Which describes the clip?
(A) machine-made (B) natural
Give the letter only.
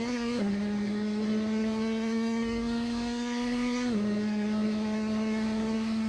A